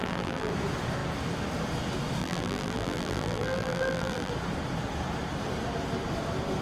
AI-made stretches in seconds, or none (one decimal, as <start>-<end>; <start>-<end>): 0.0-0.5; 2.2-4.3